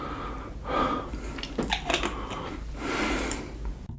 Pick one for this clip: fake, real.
real